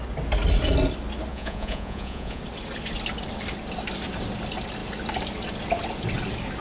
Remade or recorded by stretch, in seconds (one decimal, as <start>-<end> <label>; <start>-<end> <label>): 0.0-1.3 recorded; 1.3-2.4 remade; 2.4-6.6 recorded